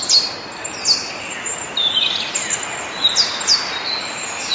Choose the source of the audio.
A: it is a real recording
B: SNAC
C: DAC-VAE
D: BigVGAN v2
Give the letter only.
A